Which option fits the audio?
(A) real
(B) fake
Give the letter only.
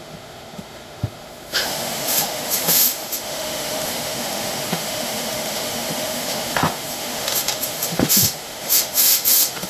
B